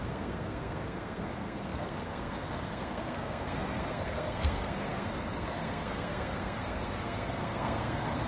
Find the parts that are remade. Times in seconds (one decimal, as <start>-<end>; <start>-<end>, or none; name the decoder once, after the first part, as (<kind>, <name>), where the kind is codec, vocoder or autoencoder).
0.0-8.3 (codec, SNAC)

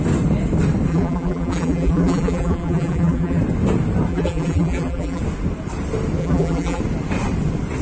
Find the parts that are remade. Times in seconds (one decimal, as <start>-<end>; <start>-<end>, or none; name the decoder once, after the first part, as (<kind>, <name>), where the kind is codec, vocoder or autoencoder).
0.9-3.4 (vocoder, BigVGAN v2); 4.1-5.2; 6.2-6.8